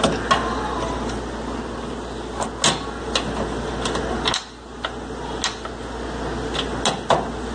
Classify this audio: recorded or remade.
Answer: recorded